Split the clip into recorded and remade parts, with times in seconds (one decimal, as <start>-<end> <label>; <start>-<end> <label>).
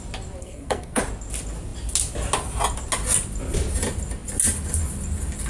0.0-0.4 recorded; 0.4-1.0 remade; 1.0-5.5 recorded